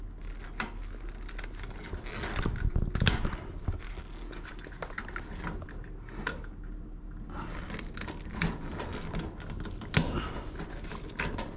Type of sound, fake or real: real